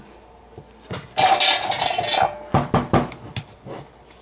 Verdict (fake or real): real